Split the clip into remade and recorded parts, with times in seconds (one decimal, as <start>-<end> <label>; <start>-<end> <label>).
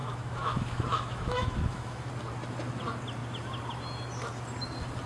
0.0-2.1 remade; 2.1-5.1 recorded